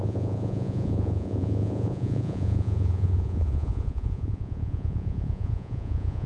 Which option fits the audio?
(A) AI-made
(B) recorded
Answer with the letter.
A